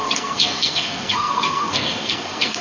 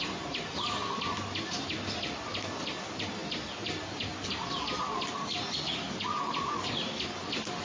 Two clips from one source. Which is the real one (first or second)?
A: second